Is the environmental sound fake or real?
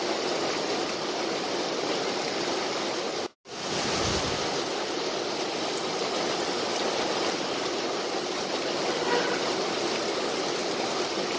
real